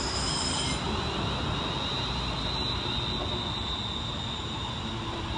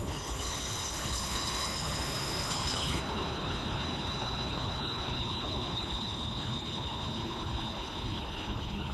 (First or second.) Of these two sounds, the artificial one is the second